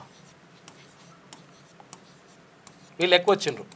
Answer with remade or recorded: recorded